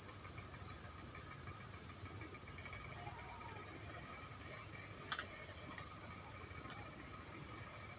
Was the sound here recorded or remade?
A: recorded